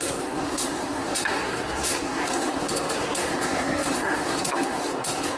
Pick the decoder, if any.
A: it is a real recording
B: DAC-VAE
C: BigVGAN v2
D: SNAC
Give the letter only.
D